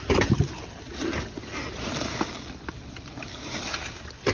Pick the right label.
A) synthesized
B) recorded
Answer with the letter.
B